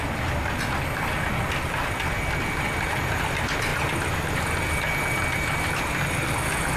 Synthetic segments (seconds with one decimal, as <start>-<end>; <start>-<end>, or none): none